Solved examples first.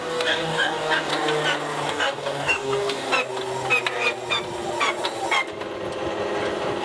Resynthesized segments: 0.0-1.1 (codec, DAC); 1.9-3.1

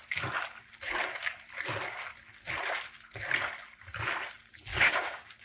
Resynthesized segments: 4.7-5.4 (codec, DAC)

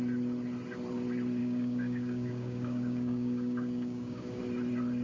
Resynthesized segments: 1.4-4.4 (codec, DAC)

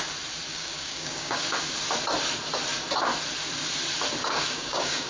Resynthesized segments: 0.5-1.5 (codec, DAC); 4.2-5.1